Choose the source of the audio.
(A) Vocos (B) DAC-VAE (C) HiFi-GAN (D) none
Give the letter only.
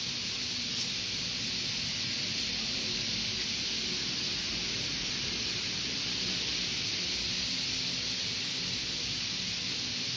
D